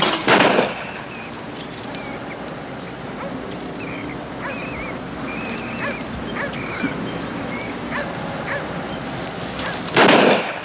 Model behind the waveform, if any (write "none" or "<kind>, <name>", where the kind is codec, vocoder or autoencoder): none